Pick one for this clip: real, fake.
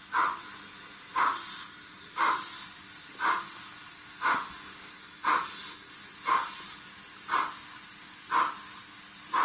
real